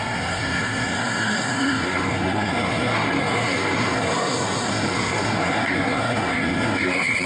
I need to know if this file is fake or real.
fake